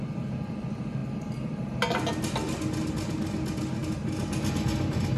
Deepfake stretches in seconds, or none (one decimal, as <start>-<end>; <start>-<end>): none